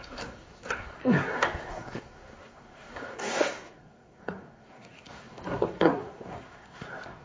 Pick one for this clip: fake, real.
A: fake